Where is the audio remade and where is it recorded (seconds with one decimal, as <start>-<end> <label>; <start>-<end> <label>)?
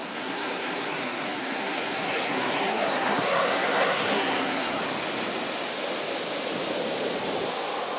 0.0-4.8 remade; 4.8-8.0 recorded